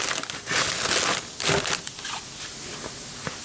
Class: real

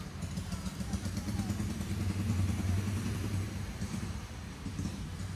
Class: fake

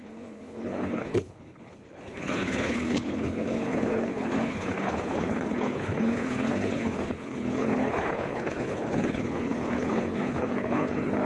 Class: fake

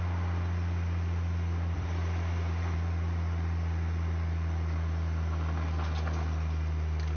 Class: real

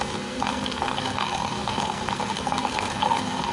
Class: fake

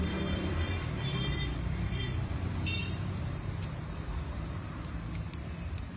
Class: fake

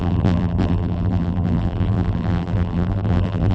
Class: fake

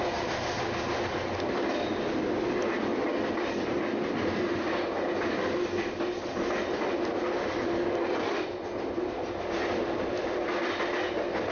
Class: real